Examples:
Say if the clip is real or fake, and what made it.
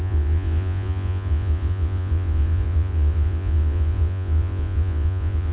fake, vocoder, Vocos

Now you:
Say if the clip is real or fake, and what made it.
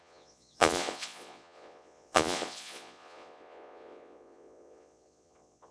fake, vocoder, Vocos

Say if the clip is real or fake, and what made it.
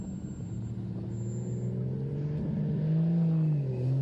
real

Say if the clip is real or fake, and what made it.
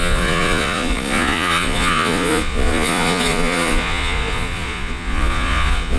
fake, vocoder, Vocos